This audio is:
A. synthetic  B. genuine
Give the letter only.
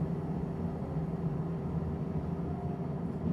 B